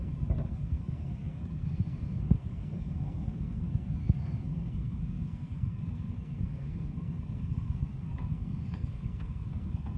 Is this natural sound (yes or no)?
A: no